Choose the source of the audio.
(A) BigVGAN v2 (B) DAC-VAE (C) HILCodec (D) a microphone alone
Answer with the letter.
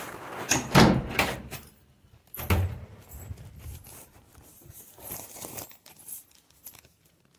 A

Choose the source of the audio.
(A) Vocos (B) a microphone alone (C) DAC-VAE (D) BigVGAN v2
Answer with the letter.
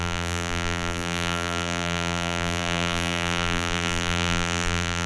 D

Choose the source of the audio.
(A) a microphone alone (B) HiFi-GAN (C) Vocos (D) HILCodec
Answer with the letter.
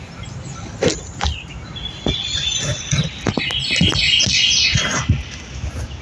A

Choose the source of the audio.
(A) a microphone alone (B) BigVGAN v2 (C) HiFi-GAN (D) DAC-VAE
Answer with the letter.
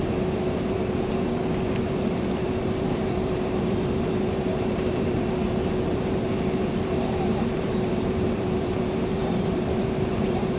B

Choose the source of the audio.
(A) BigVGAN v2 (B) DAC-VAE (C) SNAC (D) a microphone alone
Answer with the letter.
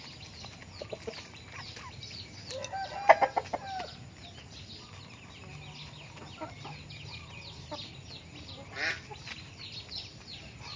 D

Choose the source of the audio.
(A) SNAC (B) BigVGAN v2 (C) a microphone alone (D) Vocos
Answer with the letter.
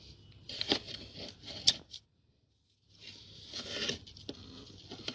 C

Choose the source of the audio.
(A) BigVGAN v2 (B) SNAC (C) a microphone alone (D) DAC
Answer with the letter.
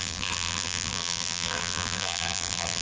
A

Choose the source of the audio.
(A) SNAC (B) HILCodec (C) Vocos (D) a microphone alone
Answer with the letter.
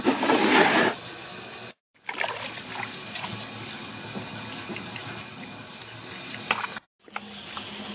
D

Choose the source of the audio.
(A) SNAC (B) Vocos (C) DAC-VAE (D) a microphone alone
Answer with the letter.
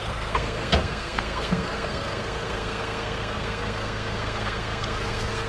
A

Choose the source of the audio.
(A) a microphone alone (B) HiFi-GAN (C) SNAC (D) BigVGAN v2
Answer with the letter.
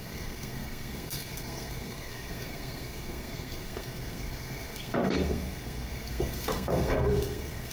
C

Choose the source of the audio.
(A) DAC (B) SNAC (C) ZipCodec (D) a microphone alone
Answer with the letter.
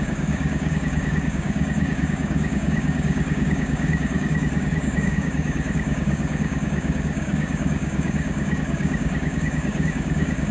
A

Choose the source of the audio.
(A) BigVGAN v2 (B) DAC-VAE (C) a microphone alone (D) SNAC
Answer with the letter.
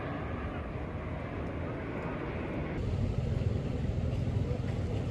C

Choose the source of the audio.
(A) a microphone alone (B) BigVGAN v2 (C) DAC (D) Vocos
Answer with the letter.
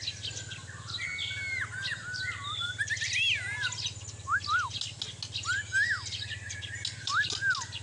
A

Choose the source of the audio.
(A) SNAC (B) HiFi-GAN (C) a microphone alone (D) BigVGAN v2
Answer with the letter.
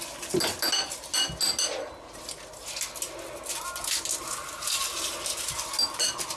C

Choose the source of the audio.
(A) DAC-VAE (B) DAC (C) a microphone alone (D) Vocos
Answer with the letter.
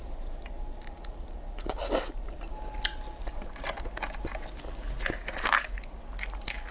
C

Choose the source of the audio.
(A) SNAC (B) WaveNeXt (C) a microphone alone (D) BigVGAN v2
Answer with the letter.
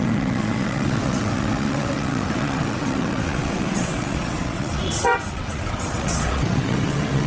B